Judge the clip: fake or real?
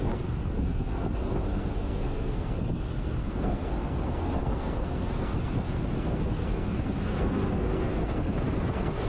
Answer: fake